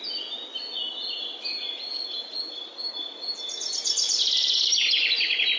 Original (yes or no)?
yes